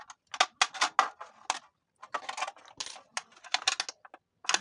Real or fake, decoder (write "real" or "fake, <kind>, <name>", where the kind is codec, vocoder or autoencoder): real